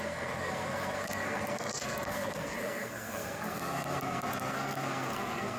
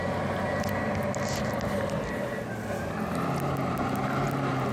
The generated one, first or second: first